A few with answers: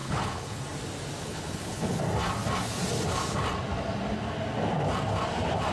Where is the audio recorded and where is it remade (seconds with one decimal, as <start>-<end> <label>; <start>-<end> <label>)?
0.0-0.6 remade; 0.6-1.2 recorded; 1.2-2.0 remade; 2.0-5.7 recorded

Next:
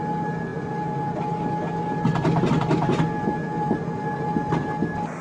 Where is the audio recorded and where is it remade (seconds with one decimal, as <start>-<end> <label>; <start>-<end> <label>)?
0.0-5.2 recorded

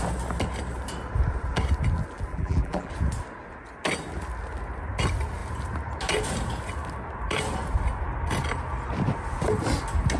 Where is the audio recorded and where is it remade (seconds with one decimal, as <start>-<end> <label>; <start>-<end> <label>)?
0.0-2.3 recorded; 2.3-2.9 remade; 2.9-10.2 recorded

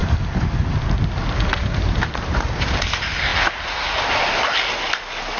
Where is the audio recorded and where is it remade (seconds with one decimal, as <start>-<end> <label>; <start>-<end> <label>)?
0.0-5.4 recorded